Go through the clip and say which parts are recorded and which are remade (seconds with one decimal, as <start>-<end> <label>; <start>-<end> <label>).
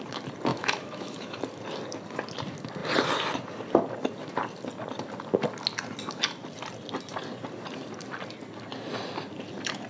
0.0-0.5 recorded; 0.5-1.4 remade; 1.4-9.9 recorded